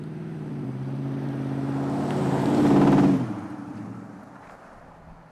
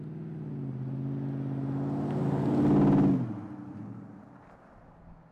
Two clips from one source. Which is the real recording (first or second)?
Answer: second